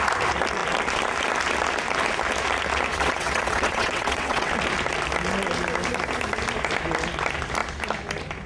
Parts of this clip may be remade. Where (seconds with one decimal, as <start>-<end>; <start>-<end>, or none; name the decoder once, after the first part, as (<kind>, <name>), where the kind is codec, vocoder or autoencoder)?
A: 2.9-4.5 (vocoder, WaveNeXt)

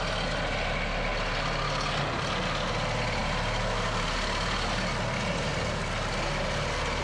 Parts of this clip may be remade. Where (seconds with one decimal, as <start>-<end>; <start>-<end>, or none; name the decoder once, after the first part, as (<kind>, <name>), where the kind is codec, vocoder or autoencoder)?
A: none

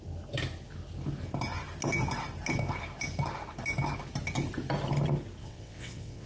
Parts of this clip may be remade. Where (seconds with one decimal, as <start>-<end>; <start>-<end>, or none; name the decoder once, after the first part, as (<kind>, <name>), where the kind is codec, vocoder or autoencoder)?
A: 5.4-6.3 (vocoder, WaveNeXt)

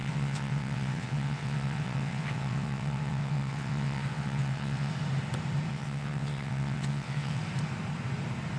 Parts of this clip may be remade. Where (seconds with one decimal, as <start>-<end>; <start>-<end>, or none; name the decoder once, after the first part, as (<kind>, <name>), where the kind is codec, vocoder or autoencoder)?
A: 0.0-4.9 (vocoder, WaveNeXt); 5.7-7.4

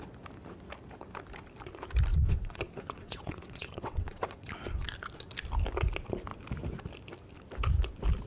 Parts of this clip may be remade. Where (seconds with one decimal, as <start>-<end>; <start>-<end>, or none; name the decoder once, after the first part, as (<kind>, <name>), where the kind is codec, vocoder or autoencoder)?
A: 2.1-4.5 (vocoder, WaveNeXt)

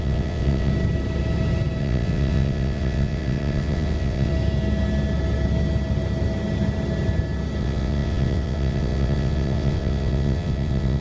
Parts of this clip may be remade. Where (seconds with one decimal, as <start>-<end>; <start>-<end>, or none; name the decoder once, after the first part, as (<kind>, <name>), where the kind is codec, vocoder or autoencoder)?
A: 0.0-0.7 (vocoder, WaveNeXt); 1.8-4.3; 7.6-11.0